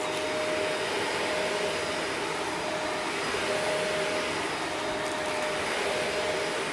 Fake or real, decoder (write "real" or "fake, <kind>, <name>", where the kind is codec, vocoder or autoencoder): real